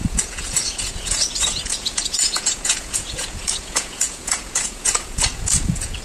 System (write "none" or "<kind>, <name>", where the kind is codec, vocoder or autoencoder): vocoder, Vocos